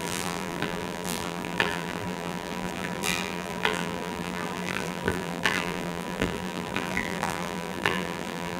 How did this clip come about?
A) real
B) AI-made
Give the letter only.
B